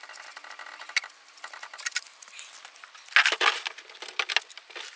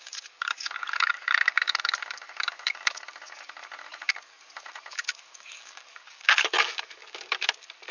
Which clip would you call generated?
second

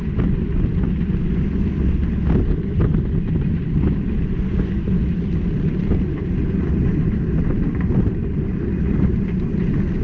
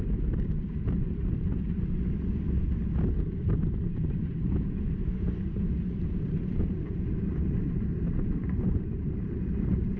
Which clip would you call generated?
second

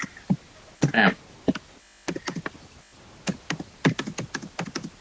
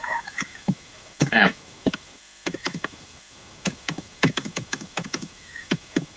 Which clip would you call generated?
second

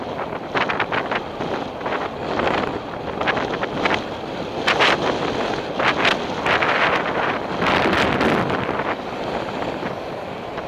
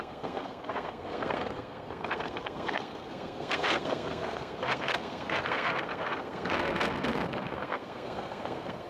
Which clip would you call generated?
second